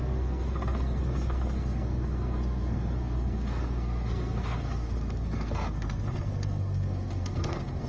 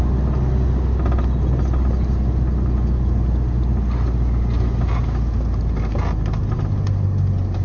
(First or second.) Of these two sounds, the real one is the second